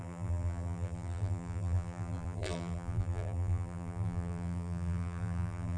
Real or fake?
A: fake